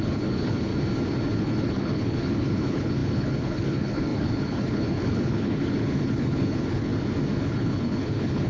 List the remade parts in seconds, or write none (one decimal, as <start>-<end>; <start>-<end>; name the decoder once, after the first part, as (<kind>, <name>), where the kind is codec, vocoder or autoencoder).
0.0-0.7 (codec, HILCodec); 1.4-6.9; 7.4-8.5